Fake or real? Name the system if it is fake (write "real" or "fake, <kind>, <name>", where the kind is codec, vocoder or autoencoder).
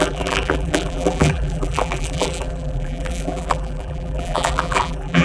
fake, vocoder, BigVGAN v2